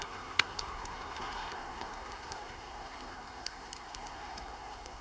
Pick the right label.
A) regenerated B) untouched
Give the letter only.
A